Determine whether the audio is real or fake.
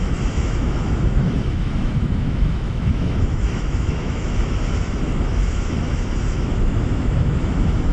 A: fake